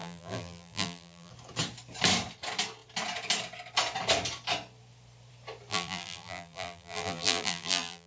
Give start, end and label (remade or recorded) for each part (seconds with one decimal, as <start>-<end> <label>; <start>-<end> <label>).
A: 0.0-1.3 remade; 1.3-5.7 recorded; 5.7-8.1 remade